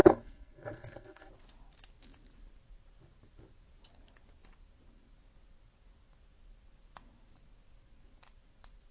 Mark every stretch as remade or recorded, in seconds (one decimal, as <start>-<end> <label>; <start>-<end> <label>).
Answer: 0.0-1.3 remade; 1.3-8.9 recorded